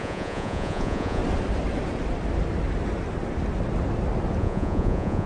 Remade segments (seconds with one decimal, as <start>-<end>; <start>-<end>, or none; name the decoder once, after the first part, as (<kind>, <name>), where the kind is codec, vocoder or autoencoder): 0.0-1.2 (vocoder, Vocos); 4.4-5.3